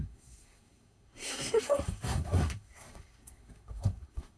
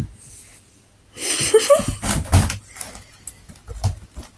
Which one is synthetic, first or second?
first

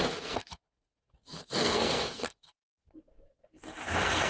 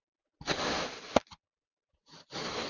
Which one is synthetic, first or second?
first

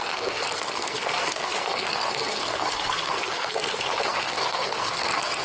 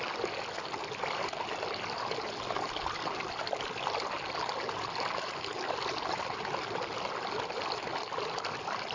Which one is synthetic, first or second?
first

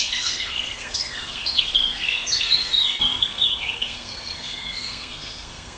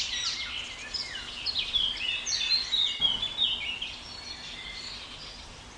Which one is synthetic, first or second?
first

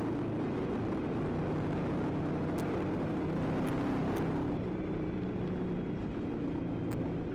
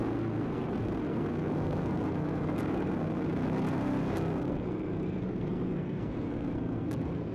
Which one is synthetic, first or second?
second